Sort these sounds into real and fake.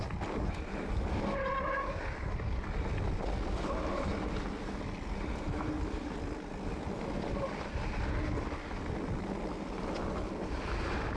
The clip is real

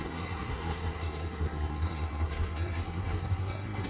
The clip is fake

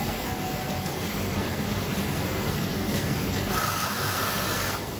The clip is fake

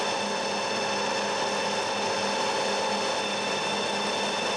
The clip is real